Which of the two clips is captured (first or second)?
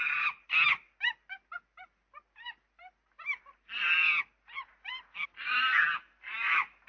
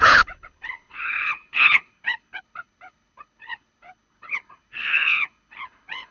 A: first